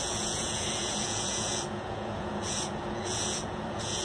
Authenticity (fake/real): fake